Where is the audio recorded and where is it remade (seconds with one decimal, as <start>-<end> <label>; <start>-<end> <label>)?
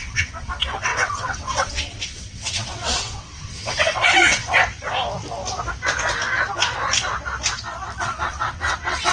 0.0-4.6 remade; 4.6-8.0 recorded; 8.0-9.1 remade